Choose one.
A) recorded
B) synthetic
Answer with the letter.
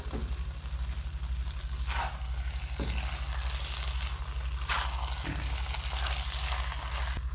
A